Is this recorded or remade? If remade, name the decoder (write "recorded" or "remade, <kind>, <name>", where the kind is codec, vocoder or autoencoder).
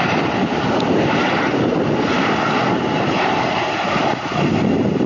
recorded